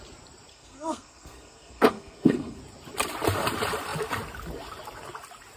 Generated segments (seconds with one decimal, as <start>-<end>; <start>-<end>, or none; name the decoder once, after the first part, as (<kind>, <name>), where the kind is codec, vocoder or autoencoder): 0.5-2.6 (codec, SNAC)